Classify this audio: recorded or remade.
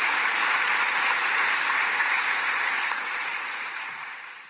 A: remade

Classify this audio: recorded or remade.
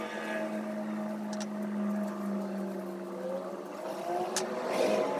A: recorded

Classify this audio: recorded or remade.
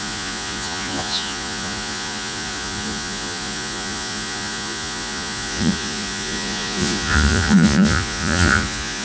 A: remade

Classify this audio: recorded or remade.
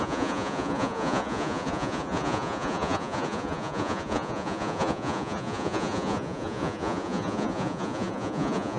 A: remade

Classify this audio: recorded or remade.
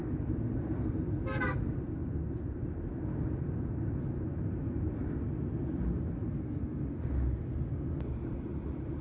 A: recorded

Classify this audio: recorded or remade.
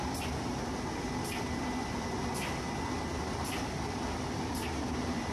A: recorded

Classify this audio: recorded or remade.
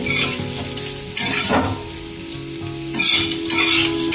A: recorded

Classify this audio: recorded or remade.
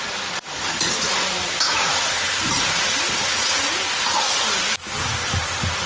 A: recorded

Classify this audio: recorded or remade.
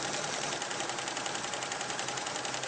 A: remade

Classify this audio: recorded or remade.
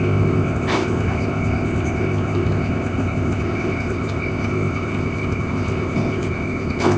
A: remade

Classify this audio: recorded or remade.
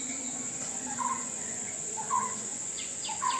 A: remade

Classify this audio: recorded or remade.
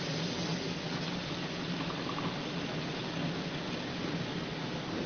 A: recorded